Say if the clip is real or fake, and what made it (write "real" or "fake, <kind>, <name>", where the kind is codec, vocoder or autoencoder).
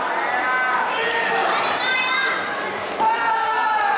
real